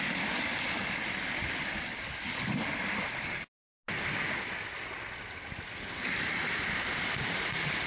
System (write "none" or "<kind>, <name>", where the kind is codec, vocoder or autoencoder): none